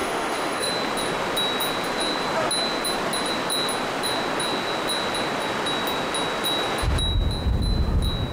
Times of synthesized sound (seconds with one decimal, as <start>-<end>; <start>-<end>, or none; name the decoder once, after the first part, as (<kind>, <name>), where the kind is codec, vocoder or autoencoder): 0.0-0.7 (autoencoder, DAC-VAE)